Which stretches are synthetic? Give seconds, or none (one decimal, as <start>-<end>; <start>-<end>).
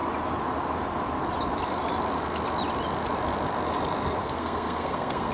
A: 4.2-5.3